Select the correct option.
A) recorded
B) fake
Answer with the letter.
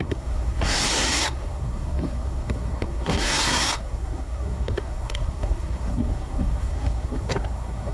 B